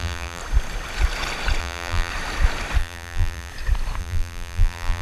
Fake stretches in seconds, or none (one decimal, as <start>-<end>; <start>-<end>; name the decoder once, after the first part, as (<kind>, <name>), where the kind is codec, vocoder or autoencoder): 0.0-0.4 (vocoder, BigVGAN v2); 1.6-2.1; 2.8-3.5; 4.0-5.0

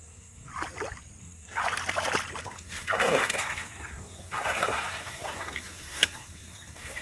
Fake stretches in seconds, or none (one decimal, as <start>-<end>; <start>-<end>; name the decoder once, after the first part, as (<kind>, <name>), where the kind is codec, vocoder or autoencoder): 0.0-0.5 (codec, SNAC); 1.2-1.6; 2.4-7.0

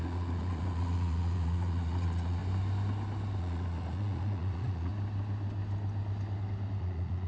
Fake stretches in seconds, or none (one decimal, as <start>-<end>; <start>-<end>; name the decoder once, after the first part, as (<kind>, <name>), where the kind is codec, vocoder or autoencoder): 0.0-2.4 (vocoder, Vocos); 3.4-4.9; 6.8-7.3

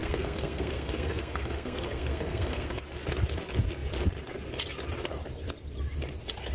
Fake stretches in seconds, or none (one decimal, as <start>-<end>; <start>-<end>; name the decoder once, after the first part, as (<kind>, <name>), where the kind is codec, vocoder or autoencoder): 0.0-2.8 (codec, SNAC)